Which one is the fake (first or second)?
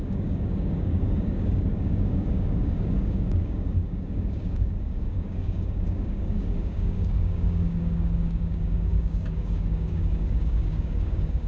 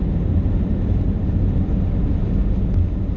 first